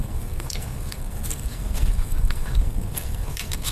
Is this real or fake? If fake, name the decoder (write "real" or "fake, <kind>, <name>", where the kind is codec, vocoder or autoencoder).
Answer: fake, codec, SNAC